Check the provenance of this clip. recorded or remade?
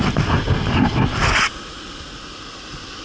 recorded